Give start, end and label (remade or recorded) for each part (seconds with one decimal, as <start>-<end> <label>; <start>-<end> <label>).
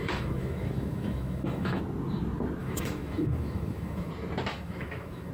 0.0-1.8 remade; 1.8-2.6 recorded; 2.6-4.1 remade; 4.1-4.5 recorded; 4.5-5.3 remade